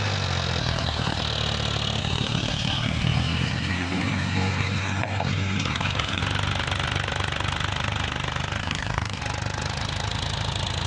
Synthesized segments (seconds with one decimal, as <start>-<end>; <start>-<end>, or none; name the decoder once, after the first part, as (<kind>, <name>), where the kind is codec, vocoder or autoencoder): 0.6-1.2 (codec, SNAC); 2.0-6.2; 8.6-9.2